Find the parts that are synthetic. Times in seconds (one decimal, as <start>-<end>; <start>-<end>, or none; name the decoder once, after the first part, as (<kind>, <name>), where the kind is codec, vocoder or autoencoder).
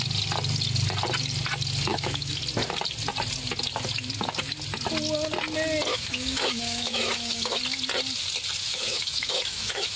1.9-2.4 (autoencoder, DAC-VAE); 5.9-7.6; 8.6-10.0